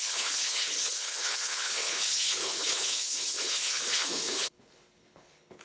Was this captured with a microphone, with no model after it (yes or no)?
no